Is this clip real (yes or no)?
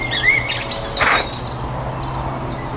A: yes